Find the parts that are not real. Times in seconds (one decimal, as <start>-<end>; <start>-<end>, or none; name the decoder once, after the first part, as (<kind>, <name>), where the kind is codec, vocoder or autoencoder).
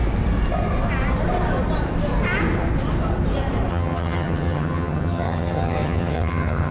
3.7-6.7 (vocoder, HiFi-GAN)